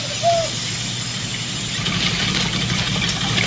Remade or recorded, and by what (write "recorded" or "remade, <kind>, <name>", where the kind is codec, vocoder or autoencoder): recorded